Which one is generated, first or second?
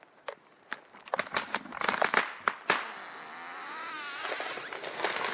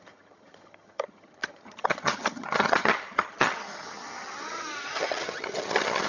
second